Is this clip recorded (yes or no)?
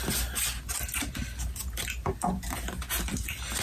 yes